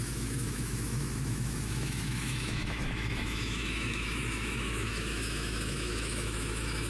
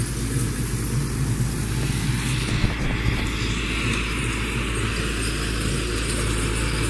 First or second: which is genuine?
second